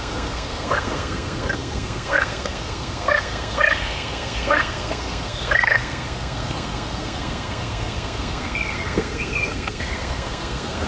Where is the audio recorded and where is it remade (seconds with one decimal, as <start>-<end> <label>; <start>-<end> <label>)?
0.0-10.9 remade